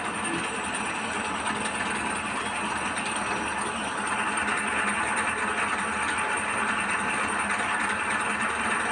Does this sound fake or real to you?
real